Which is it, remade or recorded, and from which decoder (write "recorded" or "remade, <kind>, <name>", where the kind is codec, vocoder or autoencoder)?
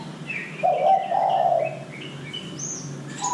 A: recorded